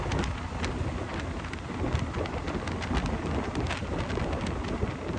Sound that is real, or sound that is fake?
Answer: real